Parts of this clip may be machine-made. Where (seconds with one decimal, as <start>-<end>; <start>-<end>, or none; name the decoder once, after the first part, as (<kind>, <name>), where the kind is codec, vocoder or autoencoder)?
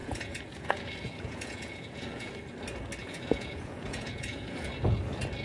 0.0-2.3 (vocoder, Vocos); 3.0-4.7